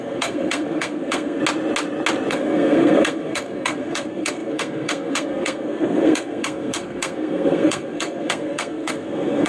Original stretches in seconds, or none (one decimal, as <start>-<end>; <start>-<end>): 1.4-2.3

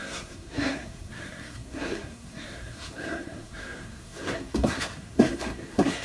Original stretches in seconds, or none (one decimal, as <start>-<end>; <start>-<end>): none

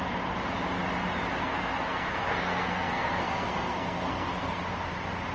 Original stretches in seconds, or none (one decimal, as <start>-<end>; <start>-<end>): 0.0-1.4; 4.6-5.3

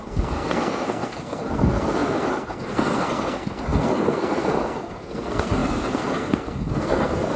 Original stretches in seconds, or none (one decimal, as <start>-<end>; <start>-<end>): none

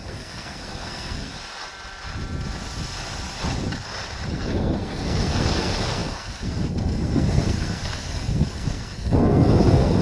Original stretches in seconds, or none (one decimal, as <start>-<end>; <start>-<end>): 1.3-4.3

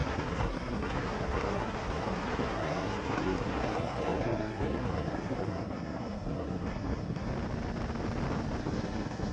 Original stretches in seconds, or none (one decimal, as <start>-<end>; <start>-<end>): 7.3-8.6

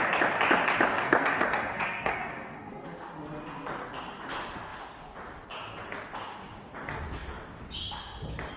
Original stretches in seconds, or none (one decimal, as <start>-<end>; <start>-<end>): 0.0-0.9; 2.7-8.6

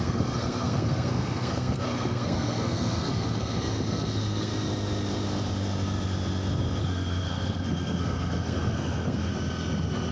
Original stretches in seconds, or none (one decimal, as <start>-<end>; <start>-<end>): 4.5-6.8; 9.3-10.1